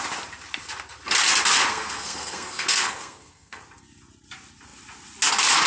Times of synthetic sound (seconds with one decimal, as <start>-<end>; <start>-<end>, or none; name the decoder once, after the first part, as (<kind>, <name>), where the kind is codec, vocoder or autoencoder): 1.7-3.6 (codec, SNAC)